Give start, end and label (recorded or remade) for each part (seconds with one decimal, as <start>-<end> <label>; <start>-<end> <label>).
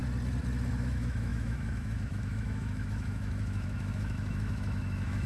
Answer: 0.0-0.7 recorded; 0.7-5.3 remade